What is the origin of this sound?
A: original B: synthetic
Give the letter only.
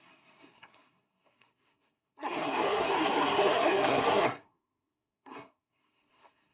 B